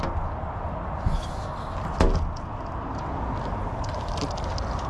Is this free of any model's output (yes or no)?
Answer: yes